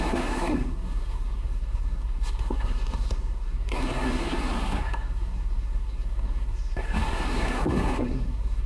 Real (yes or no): no